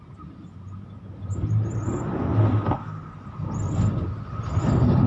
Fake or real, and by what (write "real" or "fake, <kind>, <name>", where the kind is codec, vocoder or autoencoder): real